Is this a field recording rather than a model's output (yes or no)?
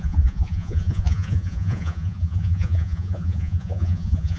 no